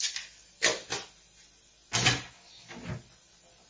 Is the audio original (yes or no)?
yes